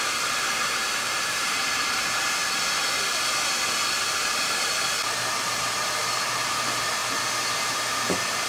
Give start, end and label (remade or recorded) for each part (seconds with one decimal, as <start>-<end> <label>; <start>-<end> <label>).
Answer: 0.0-2.4 remade; 2.4-4.3 recorded; 4.3-5.0 remade; 5.0-6.0 recorded; 6.0-7.0 remade; 7.0-7.7 recorded; 7.7-8.5 remade